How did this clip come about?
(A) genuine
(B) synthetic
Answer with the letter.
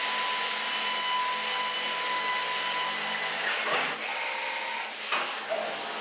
A